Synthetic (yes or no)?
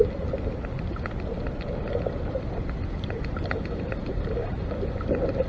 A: no